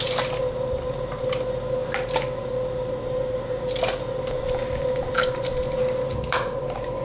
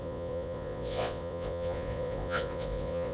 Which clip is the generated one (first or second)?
second